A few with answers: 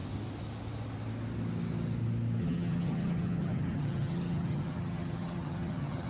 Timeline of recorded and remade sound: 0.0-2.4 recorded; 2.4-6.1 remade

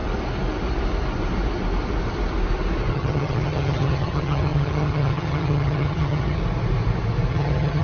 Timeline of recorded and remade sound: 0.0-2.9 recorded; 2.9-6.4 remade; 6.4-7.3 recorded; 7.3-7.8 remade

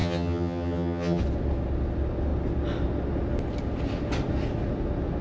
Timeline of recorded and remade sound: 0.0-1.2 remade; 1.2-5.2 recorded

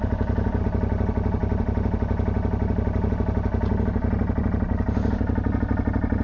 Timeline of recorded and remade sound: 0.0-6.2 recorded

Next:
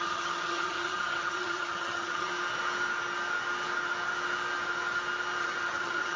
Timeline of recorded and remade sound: 0.0-2.3 remade; 2.3-5.4 recorded; 5.4-6.2 remade

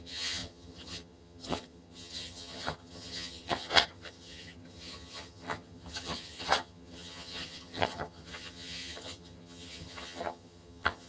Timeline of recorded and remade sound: 0.0-11.1 remade

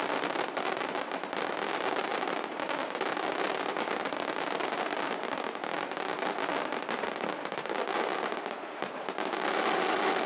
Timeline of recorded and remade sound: 0.0-10.3 recorded